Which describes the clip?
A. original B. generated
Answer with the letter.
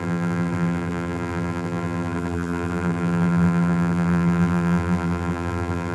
B